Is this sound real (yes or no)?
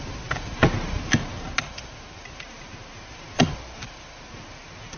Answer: yes